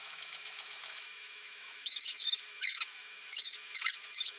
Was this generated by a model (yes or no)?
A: yes